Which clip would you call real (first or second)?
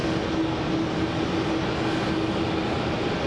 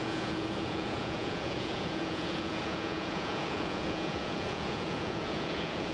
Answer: first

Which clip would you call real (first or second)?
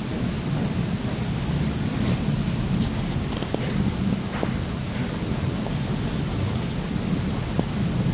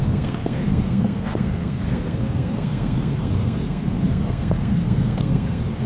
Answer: first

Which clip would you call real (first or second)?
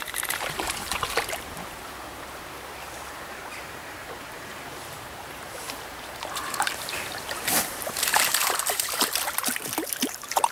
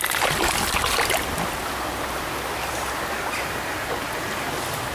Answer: second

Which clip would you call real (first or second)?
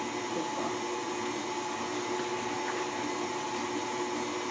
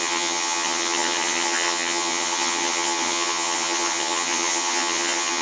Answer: first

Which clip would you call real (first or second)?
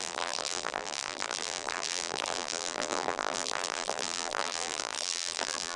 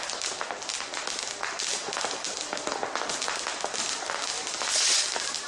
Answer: second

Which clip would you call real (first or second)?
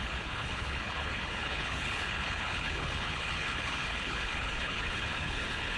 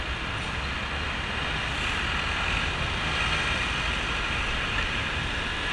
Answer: second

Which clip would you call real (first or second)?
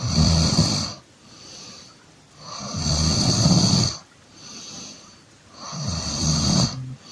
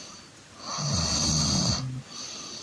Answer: second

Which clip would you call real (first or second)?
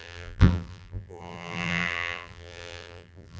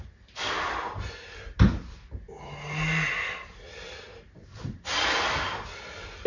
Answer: second